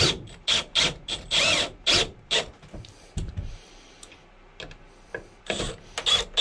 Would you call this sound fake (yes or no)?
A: yes